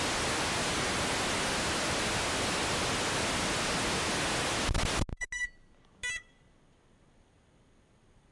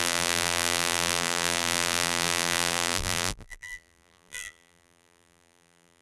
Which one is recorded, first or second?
first